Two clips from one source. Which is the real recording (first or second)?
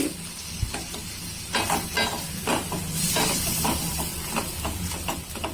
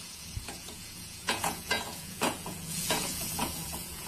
first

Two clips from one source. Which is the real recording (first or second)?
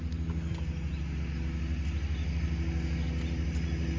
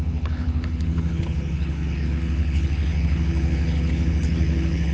first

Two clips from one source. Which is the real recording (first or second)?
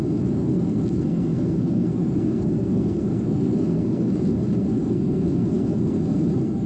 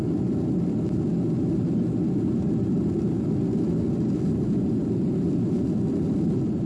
second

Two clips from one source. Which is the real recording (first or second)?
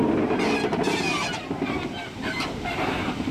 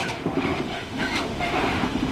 first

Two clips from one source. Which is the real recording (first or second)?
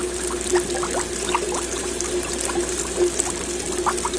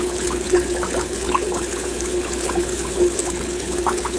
first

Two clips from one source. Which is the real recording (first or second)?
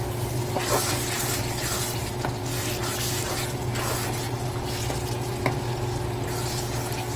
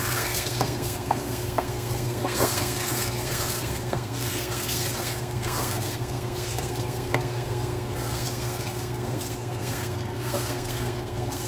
first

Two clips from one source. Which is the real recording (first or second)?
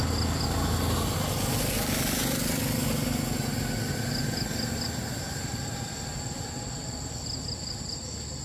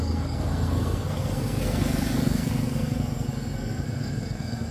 first